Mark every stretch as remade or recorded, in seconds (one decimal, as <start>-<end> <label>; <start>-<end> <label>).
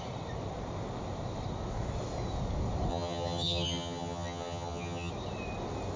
0.0-2.9 recorded; 2.9-5.1 remade; 5.1-6.0 recorded